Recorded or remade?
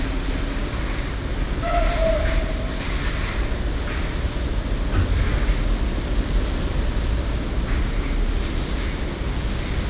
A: recorded